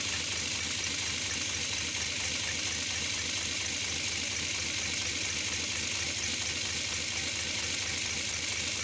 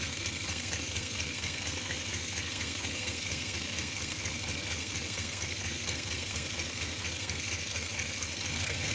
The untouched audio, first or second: first